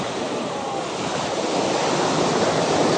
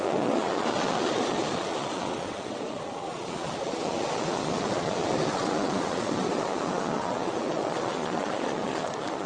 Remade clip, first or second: second